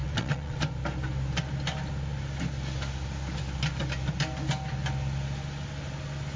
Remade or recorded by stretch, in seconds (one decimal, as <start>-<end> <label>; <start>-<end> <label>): 0.0-0.6 remade; 0.6-6.4 recorded

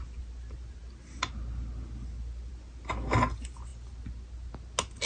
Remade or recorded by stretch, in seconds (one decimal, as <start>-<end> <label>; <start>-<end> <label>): 0.0-5.1 recorded